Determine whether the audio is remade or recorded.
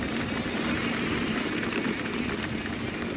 recorded